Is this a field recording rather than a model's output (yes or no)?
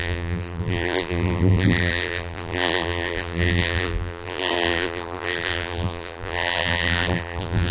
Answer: no